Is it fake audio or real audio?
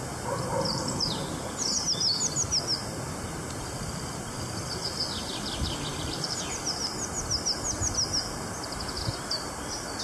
real